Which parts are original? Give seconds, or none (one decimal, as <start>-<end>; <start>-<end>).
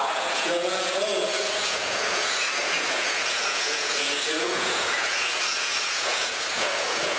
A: none